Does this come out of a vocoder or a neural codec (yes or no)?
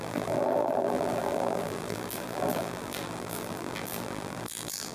yes